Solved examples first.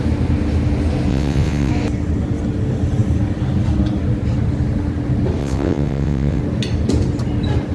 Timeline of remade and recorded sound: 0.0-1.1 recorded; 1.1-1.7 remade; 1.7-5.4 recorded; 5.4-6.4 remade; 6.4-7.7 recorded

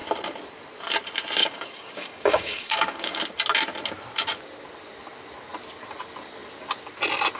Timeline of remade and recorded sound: 0.0-1.4 recorded; 1.4-3.2 remade; 3.2-7.4 recorded

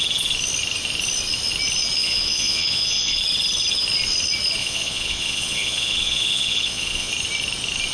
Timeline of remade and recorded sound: 0.0-2.0 recorded; 2.0-3.2 remade; 3.2-4.6 recorded; 4.6-7.1 remade; 7.1-7.9 recorded

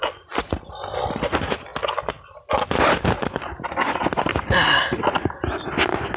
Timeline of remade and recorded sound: 0.0-6.2 recorded

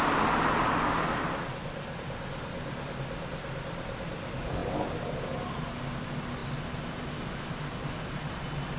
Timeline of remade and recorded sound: 0.0-8.8 recorded